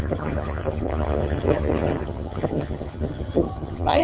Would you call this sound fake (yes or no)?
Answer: yes